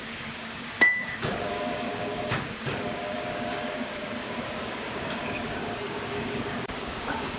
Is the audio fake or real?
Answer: fake